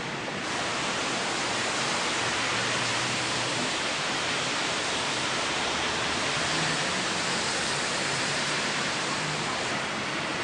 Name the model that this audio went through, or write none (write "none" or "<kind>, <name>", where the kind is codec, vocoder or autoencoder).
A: vocoder, BigVGAN v2